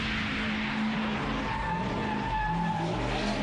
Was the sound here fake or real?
real